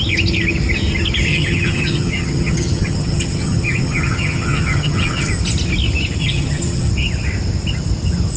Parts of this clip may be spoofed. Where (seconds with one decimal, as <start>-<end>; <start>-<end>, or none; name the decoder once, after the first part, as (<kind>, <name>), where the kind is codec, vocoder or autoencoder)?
1.3-5.3 (vocoder, HiFi-GAN); 6.2-6.9